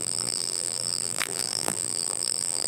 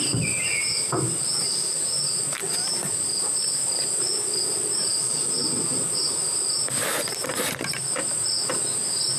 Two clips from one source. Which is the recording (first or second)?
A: second